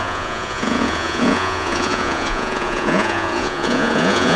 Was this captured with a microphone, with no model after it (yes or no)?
no